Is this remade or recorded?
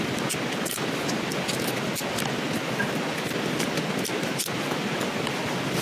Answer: recorded